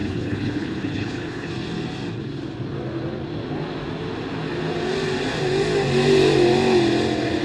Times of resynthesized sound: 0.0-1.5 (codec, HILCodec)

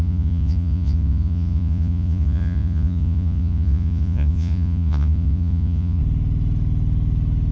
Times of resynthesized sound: 0.0-6.0 (vocoder, Vocos)